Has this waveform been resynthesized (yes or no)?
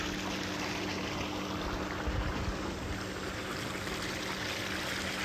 no